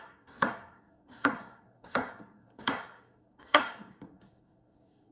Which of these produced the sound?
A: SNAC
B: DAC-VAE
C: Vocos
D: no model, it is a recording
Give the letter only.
A